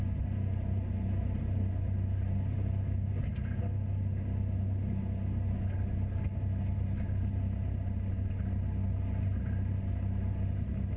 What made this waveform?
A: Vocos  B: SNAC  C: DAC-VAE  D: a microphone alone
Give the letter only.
D